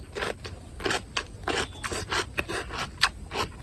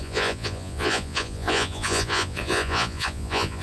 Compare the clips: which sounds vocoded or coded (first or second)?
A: second